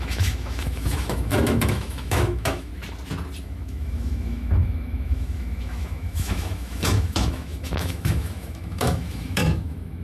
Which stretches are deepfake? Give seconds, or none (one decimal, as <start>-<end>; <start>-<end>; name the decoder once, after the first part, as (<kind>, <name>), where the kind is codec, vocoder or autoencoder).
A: 0.0-2.7 (autoencoder, DAC-VAE); 3.4-10.0